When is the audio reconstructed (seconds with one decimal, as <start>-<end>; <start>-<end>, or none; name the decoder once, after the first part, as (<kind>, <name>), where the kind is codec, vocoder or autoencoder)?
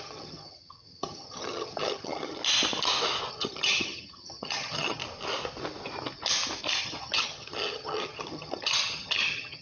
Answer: 0.0-2.4 (vocoder, HiFi-GAN); 3.3-5.0; 6.8-9.6